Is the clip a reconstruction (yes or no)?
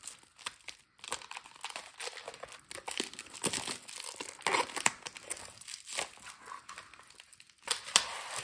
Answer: no